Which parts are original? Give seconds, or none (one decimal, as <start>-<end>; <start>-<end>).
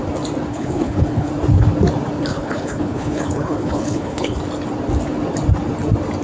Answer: 0.0-0.5; 1.3-2.3; 4.4-6.2